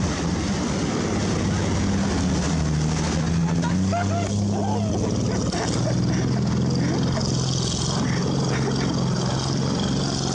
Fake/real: real